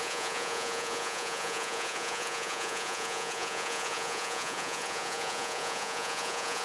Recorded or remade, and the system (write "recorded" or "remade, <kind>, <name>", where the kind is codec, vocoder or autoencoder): remade, vocoder, Vocos